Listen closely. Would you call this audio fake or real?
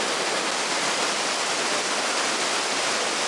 real